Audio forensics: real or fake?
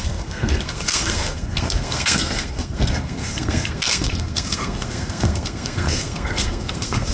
fake